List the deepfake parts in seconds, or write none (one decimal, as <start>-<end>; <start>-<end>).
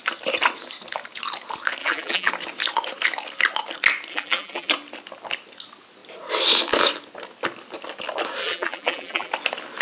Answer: 1.8-2.3; 4.1-4.7; 8.4-9.3